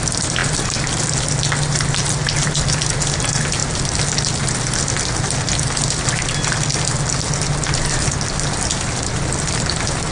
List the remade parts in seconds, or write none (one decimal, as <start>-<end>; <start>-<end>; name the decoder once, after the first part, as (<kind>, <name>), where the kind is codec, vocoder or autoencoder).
none